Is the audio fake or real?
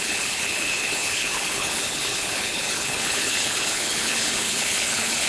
fake